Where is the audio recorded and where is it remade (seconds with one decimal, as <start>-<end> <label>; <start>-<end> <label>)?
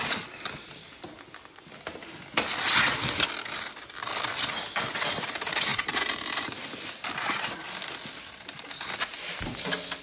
0.0-5.7 recorded; 5.7-6.6 remade; 6.6-10.0 recorded